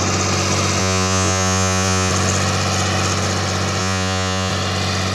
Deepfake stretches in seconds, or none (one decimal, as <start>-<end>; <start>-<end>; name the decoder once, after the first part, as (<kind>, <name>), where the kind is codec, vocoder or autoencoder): 0.8-2.1 (vocoder, Vocos); 3.8-4.5